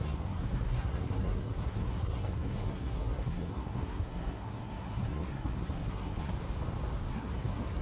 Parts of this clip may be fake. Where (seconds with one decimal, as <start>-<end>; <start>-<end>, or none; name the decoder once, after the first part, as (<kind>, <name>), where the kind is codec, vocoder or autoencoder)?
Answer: 0.0-6.3 (codec, SNAC); 7.1-7.8